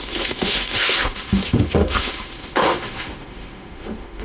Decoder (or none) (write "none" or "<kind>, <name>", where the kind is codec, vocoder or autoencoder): autoencoder, DAC-VAE